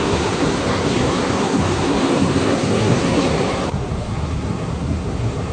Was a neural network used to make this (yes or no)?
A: yes